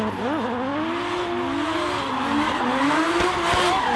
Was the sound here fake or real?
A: real